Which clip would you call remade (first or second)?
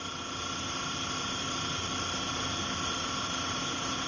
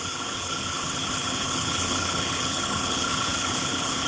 second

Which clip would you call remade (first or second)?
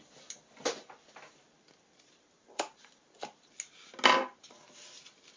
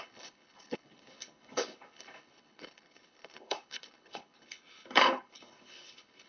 second